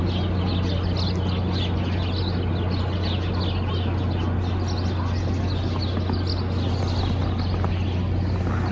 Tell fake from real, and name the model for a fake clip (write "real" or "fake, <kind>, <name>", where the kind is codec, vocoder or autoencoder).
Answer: real